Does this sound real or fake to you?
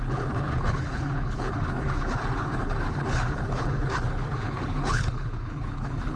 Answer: fake